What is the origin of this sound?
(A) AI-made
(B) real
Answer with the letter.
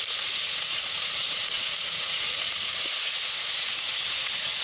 A